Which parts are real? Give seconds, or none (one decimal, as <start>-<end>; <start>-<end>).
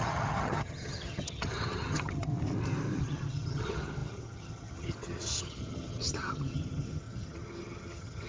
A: 2.3-3.0